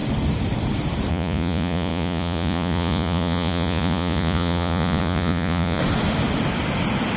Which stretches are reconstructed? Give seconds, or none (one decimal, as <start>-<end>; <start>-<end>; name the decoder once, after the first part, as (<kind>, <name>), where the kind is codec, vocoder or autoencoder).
1.1-5.8 (vocoder, Vocos)